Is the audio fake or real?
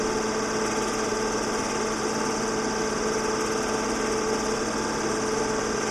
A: real